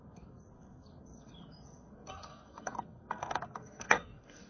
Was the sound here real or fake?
fake